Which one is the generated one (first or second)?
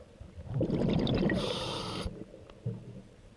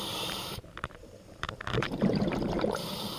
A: second